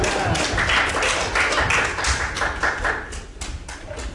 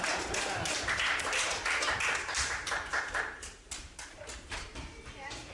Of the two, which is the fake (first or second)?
second